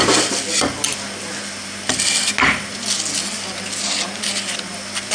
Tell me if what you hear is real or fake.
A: real